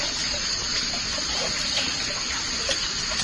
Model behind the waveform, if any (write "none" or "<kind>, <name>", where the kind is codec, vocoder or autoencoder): none